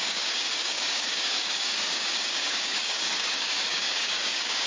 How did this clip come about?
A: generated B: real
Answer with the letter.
A